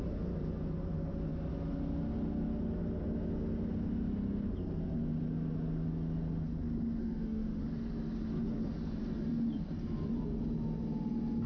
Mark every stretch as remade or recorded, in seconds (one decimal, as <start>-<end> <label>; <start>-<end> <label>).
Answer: 0.0-7.0 recorded; 7.0-7.6 remade; 7.6-11.5 recorded